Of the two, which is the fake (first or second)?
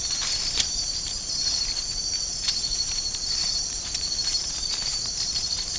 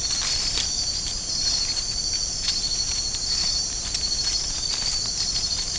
first